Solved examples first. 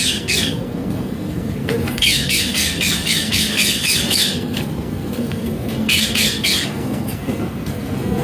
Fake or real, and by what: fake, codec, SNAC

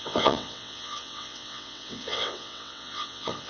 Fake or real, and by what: fake, vocoder, WaveNeXt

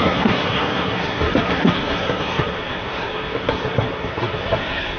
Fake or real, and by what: fake, codec, SNAC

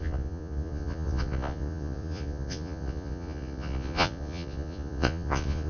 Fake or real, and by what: fake, vocoder, Vocos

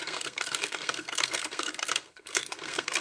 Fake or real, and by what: fake, codec, SNAC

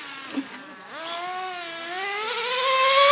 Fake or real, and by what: real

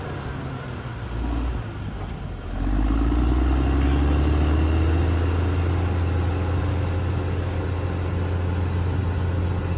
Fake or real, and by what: real